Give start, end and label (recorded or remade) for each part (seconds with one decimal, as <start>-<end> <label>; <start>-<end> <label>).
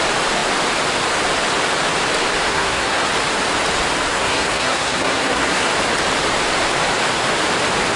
0.0-2.5 recorded; 2.5-3.1 remade; 3.1-4.1 recorded; 4.1-5.7 remade; 5.7-8.0 recorded